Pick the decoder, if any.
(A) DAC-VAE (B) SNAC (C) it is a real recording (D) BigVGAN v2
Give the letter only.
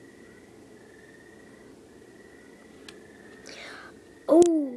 C